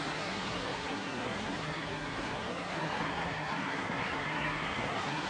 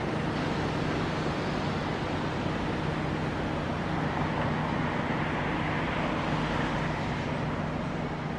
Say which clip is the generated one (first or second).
first